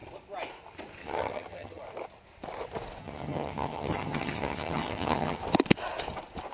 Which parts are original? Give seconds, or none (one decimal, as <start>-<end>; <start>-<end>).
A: 0.0-1.0; 1.8-3.0; 5.4-6.5